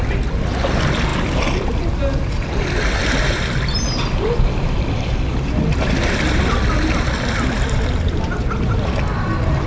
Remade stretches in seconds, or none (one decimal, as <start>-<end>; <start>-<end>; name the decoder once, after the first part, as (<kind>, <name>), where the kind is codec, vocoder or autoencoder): none